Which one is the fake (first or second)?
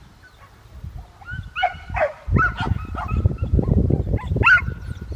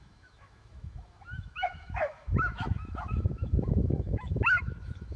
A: second